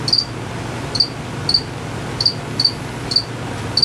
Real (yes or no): yes